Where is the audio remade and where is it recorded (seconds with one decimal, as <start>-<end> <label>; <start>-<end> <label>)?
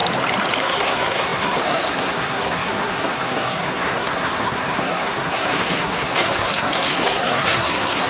0.0-0.6 recorded; 0.6-8.1 remade